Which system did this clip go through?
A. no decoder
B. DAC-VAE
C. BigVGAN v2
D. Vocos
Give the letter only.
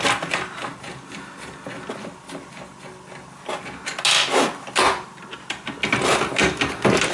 A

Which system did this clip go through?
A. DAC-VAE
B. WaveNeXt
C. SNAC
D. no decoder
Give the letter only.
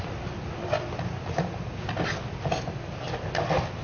D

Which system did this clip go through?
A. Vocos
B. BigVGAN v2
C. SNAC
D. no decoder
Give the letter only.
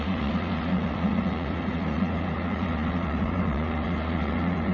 A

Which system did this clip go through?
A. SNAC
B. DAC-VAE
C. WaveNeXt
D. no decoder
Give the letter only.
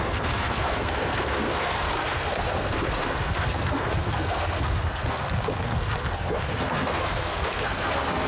A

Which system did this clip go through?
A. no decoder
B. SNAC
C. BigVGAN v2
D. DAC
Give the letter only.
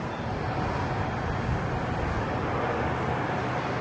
A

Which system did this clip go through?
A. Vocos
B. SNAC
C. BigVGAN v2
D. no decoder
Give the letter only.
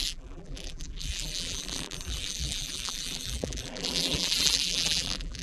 C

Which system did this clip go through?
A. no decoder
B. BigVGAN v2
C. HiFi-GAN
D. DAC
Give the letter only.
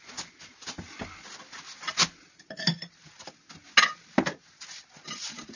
A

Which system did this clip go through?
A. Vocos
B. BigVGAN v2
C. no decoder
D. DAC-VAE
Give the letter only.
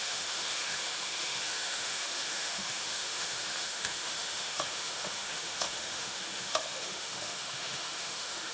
D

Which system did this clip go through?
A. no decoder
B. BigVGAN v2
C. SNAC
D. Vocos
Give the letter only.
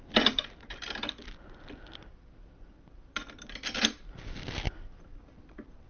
A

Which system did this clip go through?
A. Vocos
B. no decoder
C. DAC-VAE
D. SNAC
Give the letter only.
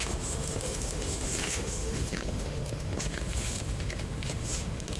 C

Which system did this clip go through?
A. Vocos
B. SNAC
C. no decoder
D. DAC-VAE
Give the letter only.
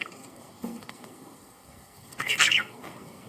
B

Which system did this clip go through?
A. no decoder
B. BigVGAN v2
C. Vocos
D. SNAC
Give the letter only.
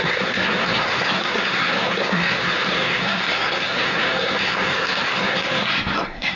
D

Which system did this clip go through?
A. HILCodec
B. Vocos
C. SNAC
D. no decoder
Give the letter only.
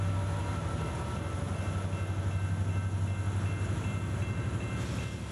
D